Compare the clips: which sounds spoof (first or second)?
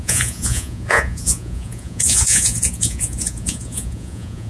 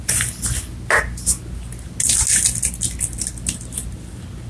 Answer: first